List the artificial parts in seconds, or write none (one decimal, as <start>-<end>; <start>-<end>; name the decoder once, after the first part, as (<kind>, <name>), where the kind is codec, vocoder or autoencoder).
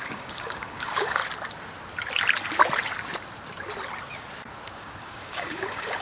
0.0-1.2 (codec, DAC); 4.8-6.0